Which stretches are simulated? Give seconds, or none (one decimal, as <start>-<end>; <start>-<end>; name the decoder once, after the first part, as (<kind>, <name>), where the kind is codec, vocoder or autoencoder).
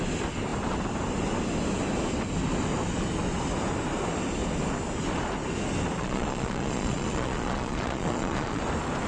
6.0-8.6 (vocoder, Vocos)